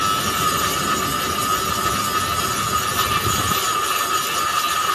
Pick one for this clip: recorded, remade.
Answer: recorded